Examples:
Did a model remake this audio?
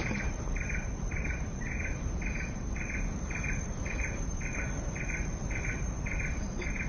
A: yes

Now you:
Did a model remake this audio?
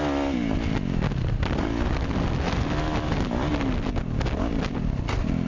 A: no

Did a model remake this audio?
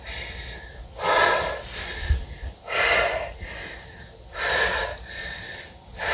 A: no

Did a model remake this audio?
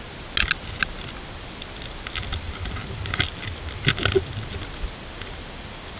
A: no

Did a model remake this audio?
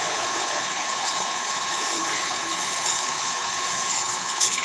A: yes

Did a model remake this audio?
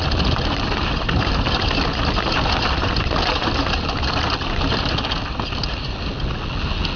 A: no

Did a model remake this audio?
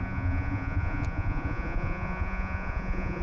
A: yes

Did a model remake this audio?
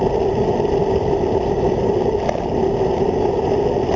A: no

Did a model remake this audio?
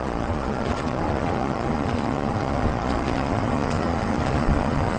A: yes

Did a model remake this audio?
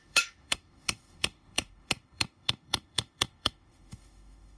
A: yes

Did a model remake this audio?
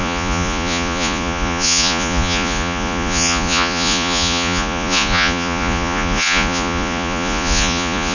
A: yes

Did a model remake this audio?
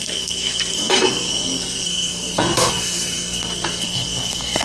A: yes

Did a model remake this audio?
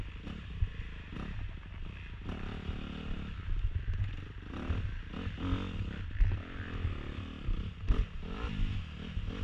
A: no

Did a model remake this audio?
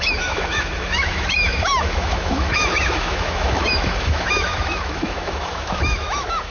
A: yes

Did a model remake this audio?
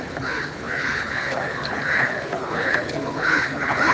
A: yes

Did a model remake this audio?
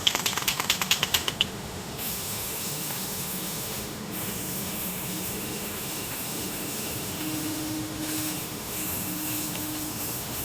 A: yes